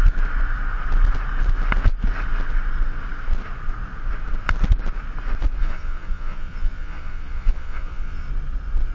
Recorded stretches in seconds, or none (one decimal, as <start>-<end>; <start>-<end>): 0.0-5.6; 8.3-8.9